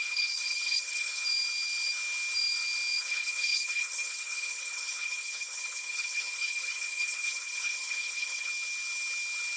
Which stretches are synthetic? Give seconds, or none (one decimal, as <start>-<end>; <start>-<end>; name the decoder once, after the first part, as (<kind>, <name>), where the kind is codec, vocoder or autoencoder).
0.0-1.2 (codec, HILCodec); 3.0-8.5